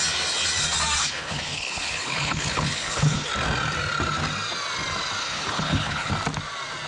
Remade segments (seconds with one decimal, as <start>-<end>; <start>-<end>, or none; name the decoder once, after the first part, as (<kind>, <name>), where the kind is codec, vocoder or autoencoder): 1.0-3.3 (codec, HILCodec); 5.2-6.1